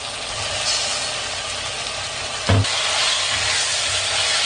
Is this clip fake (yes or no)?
no